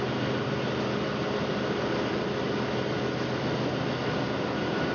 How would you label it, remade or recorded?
recorded